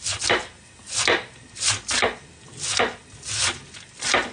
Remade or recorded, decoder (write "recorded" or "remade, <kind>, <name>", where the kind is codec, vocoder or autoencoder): recorded